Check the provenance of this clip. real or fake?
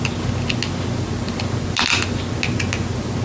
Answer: real